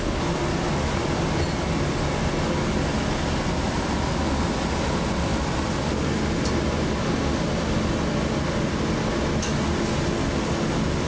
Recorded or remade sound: recorded